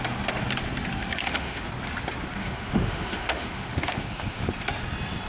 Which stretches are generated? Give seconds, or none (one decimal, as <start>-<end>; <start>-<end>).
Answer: 1.0-1.6; 2.4-4.5